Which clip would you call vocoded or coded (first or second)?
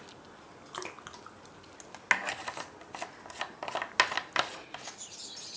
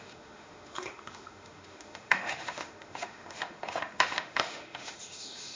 second